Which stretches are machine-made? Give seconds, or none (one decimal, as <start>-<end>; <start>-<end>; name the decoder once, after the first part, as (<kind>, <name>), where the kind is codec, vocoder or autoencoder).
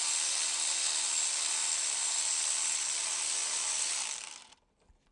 none